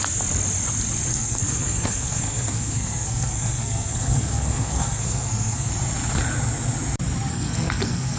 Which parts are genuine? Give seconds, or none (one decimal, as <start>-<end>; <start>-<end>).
0.0-1.1; 5.7-7.3